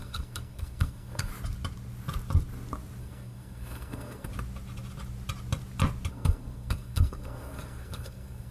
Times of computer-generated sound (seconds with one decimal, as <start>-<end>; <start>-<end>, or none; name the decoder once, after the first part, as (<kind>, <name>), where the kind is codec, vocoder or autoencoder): 0.0-1.3 (codec, SNAC); 3.0-4.3; 6.1-8.5